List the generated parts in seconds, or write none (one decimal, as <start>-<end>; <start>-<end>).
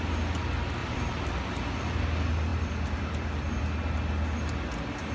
0.8-1.4; 2.5-3.6